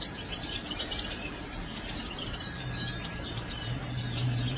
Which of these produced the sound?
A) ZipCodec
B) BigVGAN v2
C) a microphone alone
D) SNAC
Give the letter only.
B